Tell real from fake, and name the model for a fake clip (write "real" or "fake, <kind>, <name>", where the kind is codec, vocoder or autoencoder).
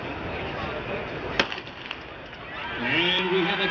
real